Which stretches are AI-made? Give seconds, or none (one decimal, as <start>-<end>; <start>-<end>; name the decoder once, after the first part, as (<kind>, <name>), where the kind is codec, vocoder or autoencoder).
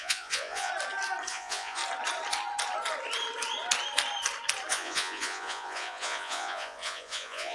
0.0-0.7 (vocoder, Vocos); 1.3-1.8; 4.7-7.5